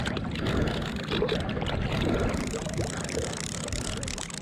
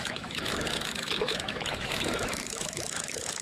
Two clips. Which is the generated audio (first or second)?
second